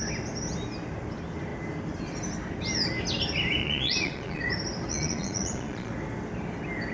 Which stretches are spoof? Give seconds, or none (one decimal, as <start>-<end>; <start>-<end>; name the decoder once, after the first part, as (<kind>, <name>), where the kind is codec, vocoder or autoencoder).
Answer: 3.6-4.4 (vocoder, Vocos); 4.9-5.9